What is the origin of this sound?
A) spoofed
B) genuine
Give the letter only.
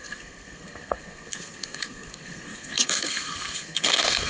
A